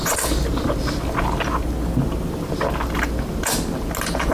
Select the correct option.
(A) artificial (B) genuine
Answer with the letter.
B